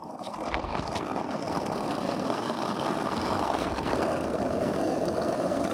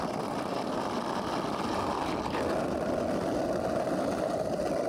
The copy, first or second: first